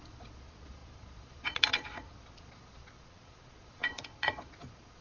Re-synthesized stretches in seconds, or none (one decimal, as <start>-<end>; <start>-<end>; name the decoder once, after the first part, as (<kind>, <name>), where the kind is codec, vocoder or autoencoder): 0.0-5.0 (vocoder, Vocos)